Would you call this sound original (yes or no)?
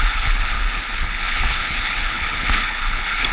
no